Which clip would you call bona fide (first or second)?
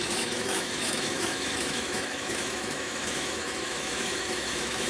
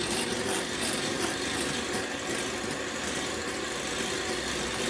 second